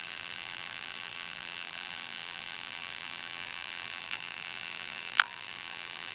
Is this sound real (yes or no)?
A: no